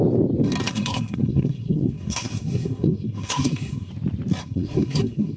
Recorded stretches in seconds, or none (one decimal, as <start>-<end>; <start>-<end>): 0.0-0.7; 3.9-4.4